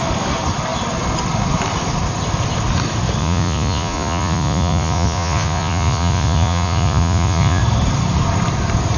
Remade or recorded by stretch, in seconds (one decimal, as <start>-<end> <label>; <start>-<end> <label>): 0.0-3.2 recorded; 3.2-7.6 remade; 7.6-9.0 recorded